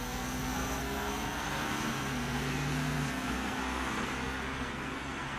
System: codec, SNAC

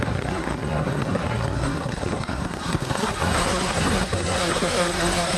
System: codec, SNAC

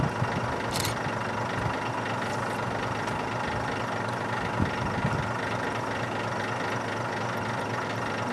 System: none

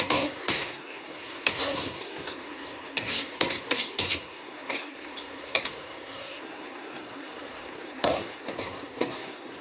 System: codec, SNAC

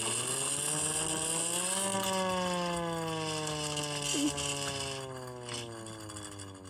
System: none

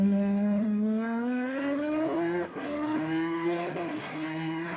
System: codec, SNAC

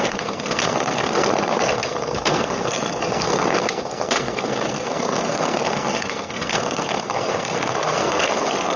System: codec, SNAC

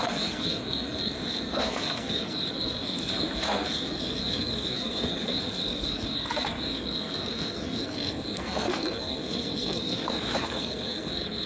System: codec, SNAC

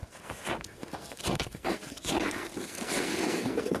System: codec, SNAC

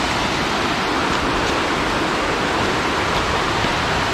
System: none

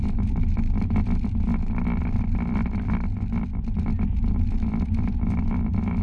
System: none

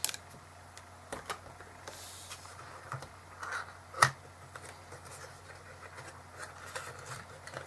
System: none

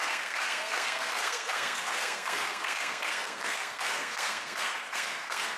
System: codec, SNAC